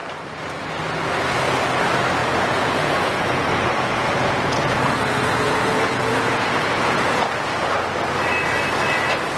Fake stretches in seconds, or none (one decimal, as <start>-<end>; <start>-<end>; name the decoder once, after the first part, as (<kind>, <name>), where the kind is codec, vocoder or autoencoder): 2.2-7.3 (vocoder, Vocos)